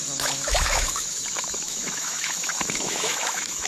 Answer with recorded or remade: remade